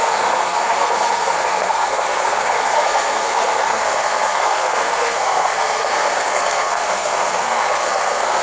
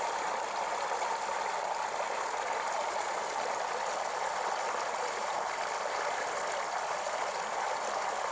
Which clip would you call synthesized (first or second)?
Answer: first